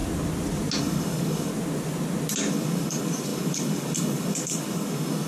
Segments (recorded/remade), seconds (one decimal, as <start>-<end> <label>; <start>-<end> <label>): 0.0-0.8 recorded; 0.8-1.5 remade; 1.5-2.5 recorded; 2.5-5.3 remade